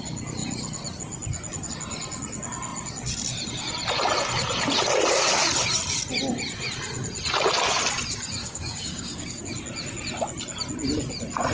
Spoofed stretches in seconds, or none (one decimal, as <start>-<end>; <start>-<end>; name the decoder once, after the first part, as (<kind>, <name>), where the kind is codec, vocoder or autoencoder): 8.4-9.4 (codec, DAC)

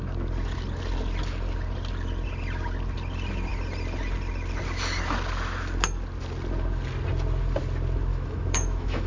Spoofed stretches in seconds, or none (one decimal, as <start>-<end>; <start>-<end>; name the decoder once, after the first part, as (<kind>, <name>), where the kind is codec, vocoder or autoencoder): 8.1-9.1 (autoencoder, DAC-VAE)

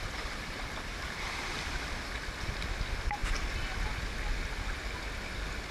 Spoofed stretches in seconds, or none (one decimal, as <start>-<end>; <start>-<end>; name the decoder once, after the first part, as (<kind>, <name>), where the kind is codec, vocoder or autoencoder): 0.0-1.9 (vocoder, BigVGAN v2)

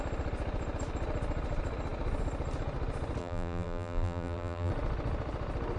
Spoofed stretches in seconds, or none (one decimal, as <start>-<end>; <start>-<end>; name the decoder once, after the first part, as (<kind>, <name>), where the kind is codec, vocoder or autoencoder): 3.2-4.7 (vocoder, BigVGAN v2)